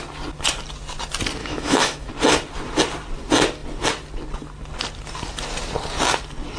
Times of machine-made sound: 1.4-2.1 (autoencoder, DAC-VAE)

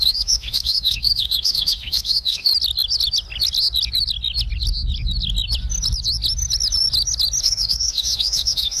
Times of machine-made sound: 0.0-2.5 (autoencoder, DAC-VAE); 7.4-8.8

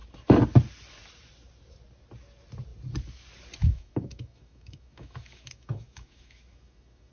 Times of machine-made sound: 3.6-7.1 (autoencoder, DAC-VAE)

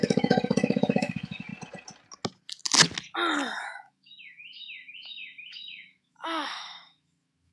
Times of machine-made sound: 0.0-1.5 (autoencoder, DAC-VAE); 3.6-7.5

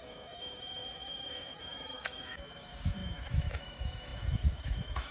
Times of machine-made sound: 0.0-5.1 (autoencoder, DAC-VAE)

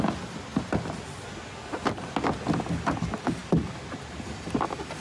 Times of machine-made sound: none

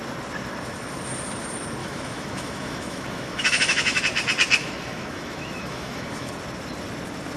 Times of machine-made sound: 1.8-4.0 (autoencoder, DAC-VAE); 4.6-6.3